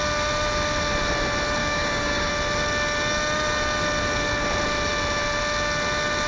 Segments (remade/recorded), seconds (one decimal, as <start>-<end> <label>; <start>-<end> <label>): 0.0-1.6 recorded; 1.6-2.3 remade; 2.3-6.3 recorded